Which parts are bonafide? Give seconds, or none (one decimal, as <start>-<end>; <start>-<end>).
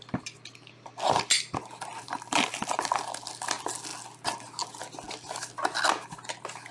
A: 0.0-6.7